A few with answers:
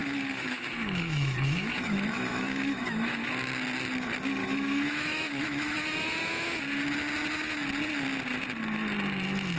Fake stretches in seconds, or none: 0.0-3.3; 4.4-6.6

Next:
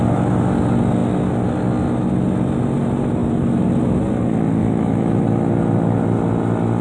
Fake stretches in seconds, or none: 4.6-5.2

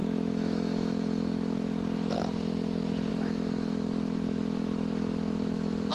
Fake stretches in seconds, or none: 0.0-1.8; 3.1-5.9

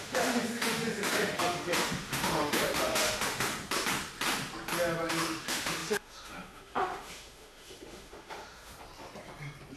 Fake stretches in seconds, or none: 0.0-3.5; 5.1-8.7

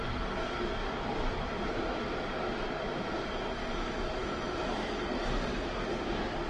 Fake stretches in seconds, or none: none

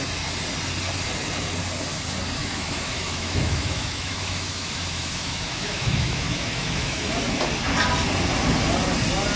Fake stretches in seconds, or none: 2.4-7.1

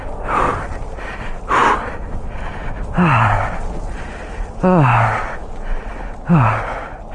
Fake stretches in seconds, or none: none